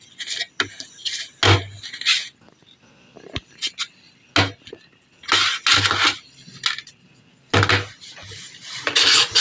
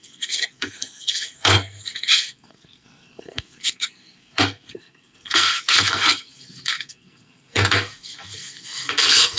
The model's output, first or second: second